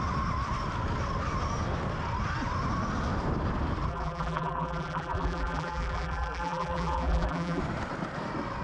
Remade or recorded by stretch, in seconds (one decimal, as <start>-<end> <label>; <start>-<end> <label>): 0.0-3.9 recorded; 3.9-7.6 remade; 7.6-8.6 recorded